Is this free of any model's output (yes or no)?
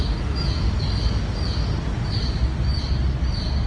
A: yes